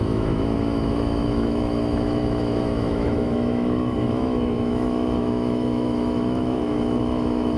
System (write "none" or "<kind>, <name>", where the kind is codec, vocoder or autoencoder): autoencoder, DAC-VAE